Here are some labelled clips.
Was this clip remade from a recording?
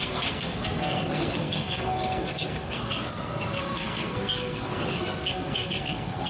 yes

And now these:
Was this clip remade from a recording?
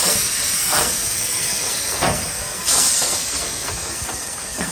yes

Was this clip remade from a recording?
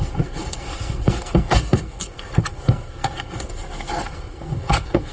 yes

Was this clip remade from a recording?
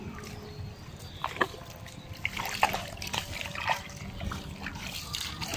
no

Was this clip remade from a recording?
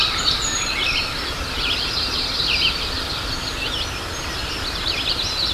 no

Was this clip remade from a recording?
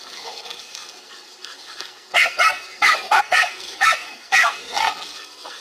yes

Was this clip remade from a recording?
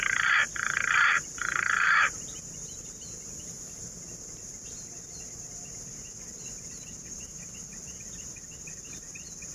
no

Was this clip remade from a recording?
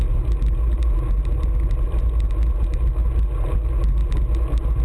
no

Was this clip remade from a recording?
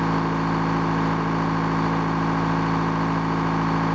no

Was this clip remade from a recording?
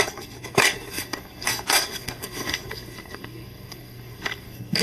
yes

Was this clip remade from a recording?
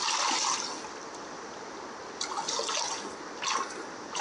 no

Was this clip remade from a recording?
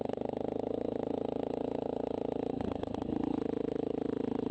no